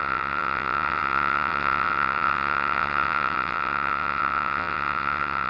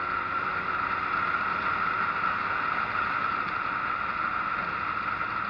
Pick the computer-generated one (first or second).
first